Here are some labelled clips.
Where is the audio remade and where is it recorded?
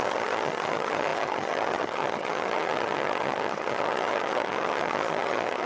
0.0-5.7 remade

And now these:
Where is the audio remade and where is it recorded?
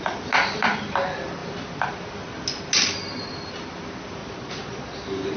0.0-4.2 recorded; 4.2-5.0 remade; 5.0-5.4 recorded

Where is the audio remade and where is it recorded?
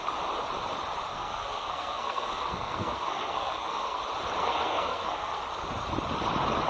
0.0-1.1 recorded; 1.1-4.0 remade; 4.0-4.4 recorded; 4.4-5.4 remade; 5.4-6.7 recorded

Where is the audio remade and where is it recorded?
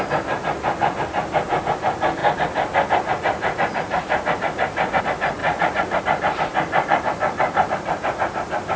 0.0-5.4 recorded; 5.4-6.0 remade; 6.0-8.8 recorded